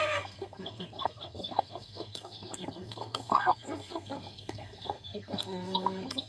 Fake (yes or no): yes